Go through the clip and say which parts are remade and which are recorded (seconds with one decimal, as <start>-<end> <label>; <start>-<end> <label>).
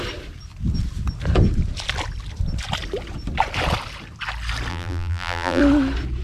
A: 0.0-4.7 recorded; 4.7-5.6 remade; 5.6-6.2 recorded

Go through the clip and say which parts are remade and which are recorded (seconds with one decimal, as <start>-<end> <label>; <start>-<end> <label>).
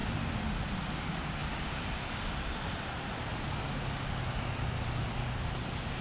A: 0.0-6.0 recorded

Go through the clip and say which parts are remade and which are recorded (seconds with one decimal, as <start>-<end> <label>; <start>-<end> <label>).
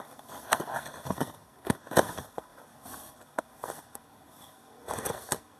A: 0.0-5.6 remade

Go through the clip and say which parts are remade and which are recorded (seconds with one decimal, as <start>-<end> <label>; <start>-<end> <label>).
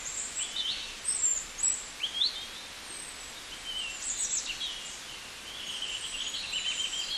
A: 0.0-7.2 recorded